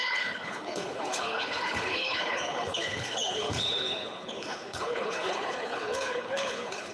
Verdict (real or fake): fake